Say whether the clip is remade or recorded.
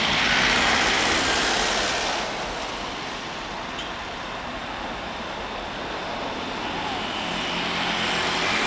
recorded